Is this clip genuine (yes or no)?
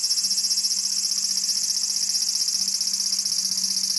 yes